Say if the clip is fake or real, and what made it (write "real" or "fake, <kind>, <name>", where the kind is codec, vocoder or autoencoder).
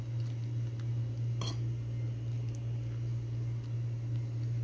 real